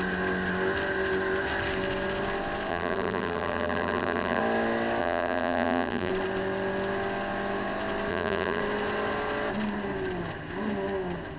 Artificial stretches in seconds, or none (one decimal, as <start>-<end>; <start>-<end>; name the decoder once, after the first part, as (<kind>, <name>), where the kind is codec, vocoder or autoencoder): 2.7-4.4 (vocoder, BigVGAN v2); 5.0-6.1; 8.1-8.6